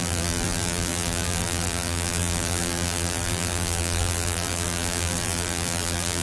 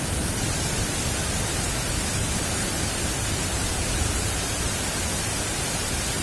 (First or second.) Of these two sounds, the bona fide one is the second